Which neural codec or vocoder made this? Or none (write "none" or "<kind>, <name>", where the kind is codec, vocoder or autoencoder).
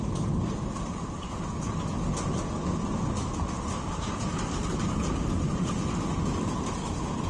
none